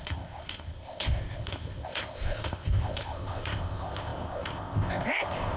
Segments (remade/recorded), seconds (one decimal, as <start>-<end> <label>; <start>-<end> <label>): 0.0-5.6 remade